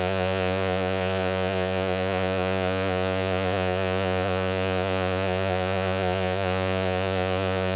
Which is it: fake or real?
fake